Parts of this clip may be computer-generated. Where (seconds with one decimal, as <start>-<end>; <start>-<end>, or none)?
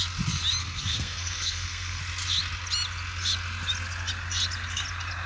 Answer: 0.6-2.0